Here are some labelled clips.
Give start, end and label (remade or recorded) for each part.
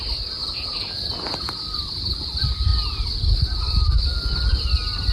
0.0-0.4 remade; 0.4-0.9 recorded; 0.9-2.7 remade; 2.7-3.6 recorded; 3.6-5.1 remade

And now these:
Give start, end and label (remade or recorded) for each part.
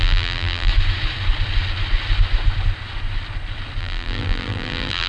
0.0-0.7 remade; 0.7-3.8 recorded; 3.8-5.1 remade